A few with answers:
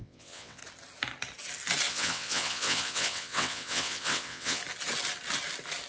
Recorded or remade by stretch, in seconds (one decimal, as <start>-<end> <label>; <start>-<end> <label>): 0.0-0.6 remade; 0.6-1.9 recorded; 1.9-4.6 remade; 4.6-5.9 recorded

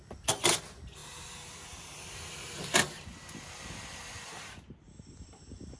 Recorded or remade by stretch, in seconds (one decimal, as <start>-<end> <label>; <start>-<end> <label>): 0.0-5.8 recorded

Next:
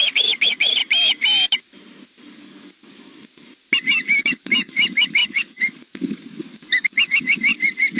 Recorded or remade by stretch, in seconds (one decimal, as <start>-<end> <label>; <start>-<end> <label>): 0.0-0.8 remade; 0.8-2.4 recorded; 2.4-3.1 remade; 3.1-4.2 recorded; 4.2-7.5 remade; 7.5-8.0 recorded

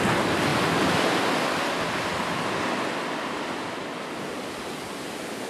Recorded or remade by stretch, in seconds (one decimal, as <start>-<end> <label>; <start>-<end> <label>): 0.0-5.5 recorded

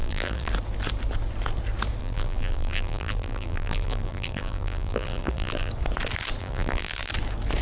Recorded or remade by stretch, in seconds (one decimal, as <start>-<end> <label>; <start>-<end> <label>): 0.0-0.5 remade; 0.5-2.0 recorded; 2.0-5.7 remade; 5.7-6.4 recorded; 6.4-7.1 remade; 7.1-7.6 recorded